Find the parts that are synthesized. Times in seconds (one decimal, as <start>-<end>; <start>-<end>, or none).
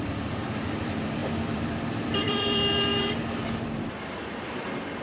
0.0-5.0